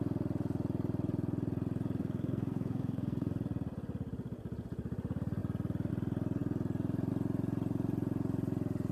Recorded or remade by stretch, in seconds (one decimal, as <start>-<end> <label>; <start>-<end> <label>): 0.0-2.0 recorded; 2.0-3.3 remade; 3.3-8.9 recorded

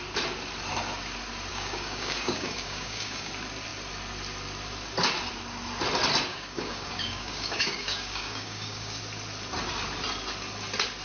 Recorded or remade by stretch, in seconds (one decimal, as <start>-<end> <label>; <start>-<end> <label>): 0.0-1.5 recorded; 1.5-3.3 remade; 3.3-6.3 recorded; 6.3-9.0 remade; 9.0-11.0 recorded